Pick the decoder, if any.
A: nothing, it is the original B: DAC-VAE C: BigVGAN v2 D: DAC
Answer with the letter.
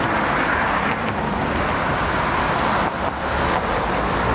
A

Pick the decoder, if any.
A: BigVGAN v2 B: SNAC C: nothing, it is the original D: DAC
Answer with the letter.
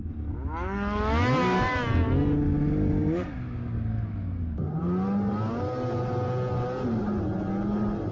C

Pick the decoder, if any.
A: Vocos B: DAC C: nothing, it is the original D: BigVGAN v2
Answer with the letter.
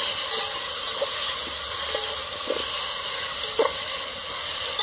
C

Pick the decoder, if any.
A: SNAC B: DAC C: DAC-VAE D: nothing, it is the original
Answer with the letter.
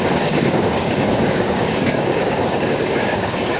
B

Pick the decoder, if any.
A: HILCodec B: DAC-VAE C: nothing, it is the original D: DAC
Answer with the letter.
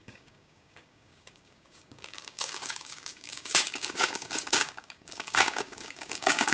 D